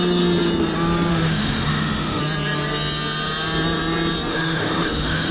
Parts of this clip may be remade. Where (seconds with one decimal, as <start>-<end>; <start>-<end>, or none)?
1.1-2.2; 4.3-5.3